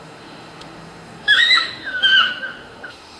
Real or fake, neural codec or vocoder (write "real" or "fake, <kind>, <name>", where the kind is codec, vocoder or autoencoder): fake, autoencoder, DAC-VAE